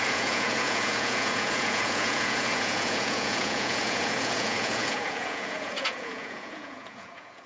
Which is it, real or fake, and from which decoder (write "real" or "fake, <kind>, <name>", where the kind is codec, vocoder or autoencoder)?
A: fake, vocoder, Vocos